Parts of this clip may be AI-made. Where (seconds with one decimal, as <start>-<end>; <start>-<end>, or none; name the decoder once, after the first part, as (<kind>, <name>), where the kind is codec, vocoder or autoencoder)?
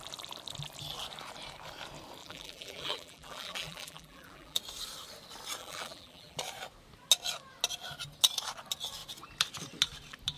2.2-4.6 (vocoder, BigVGAN v2); 5.6-6.4